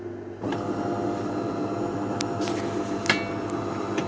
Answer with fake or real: real